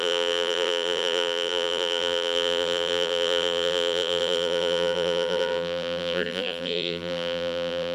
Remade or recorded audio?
remade